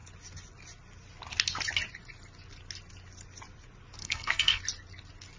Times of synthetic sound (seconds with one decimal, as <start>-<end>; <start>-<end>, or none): 4.0-4.6